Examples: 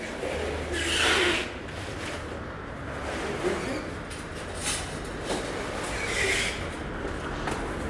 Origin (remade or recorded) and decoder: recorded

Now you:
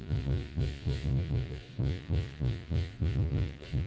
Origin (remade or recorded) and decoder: remade, vocoder, Vocos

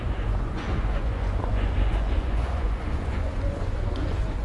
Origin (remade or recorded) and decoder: remade, vocoder, Vocos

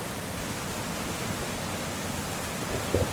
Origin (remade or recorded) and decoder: recorded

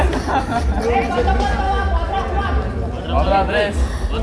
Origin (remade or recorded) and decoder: recorded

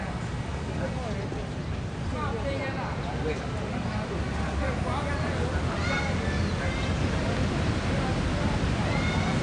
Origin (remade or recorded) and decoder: recorded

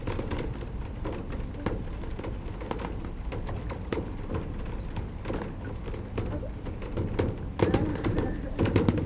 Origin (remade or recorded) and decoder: recorded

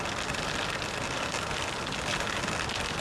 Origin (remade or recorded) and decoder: recorded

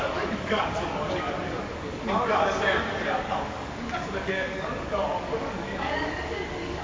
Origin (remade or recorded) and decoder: remade, codec, DAC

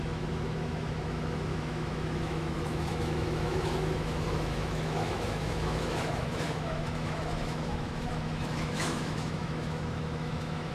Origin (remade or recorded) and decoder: remade, autoencoder, DAC-VAE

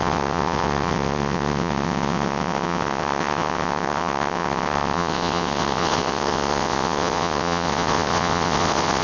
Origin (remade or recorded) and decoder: remade, vocoder, WaveNeXt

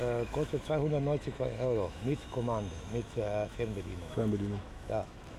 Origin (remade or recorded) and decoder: remade, autoencoder, DAC-VAE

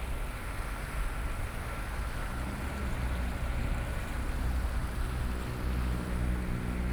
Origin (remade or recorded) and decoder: recorded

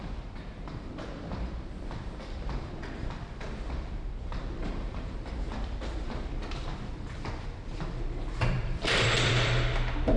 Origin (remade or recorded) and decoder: remade, vocoder, BigVGAN v2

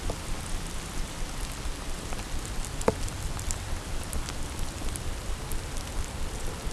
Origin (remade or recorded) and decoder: recorded